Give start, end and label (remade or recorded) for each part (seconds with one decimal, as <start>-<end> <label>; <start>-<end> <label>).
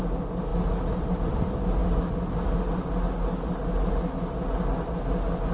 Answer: 0.0-5.5 recorded